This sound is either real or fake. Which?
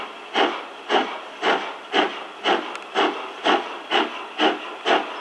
real